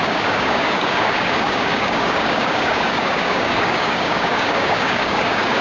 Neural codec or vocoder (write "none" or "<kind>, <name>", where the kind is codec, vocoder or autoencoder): codec, DAC